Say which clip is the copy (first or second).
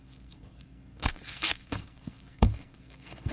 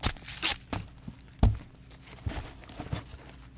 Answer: first